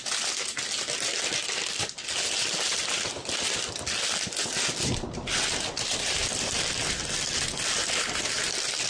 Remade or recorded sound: recorded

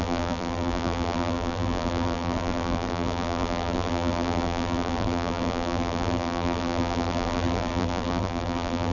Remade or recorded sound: remade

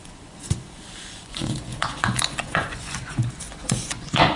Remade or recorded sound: remade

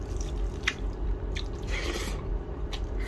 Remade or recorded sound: remade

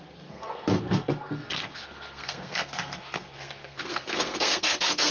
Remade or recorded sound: remade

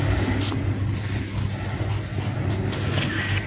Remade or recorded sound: recorded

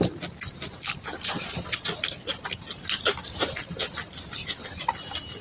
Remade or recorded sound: recorded